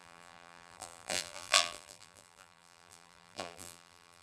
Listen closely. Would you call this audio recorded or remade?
remade